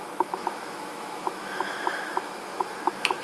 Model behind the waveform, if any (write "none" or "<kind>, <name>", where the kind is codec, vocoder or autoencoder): autoencoder, DAC-VAE